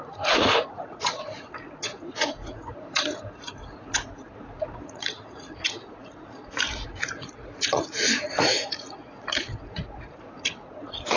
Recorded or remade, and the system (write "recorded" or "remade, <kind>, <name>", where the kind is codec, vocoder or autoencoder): remade, vocoder, Vocos